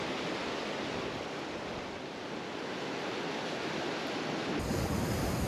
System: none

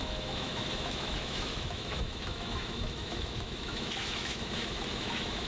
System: autoencoder, DAC-VAE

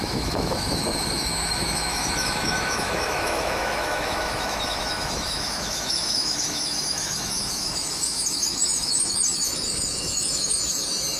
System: autoencoder, DAC-VAE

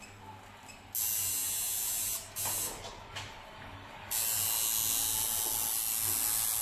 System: none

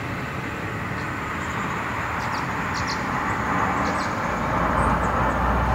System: none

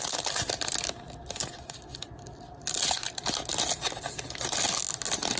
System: none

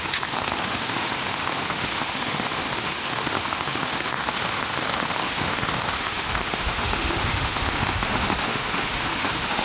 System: autoencoder, DAC-VAE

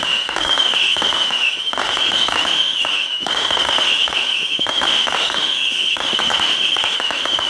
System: autoencoder, DAC-VAE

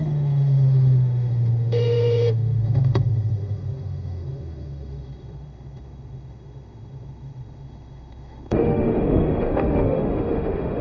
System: autoencoder, DAC-VAE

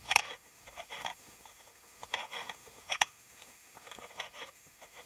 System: autoencoder, DAC-VAE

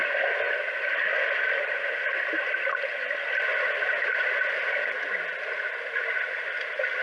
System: none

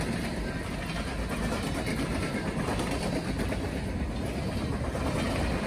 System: none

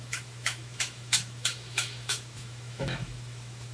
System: autoencoder, DAC-VAE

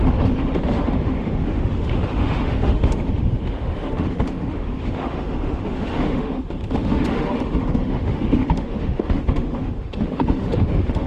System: autoencoder, DAC-VAE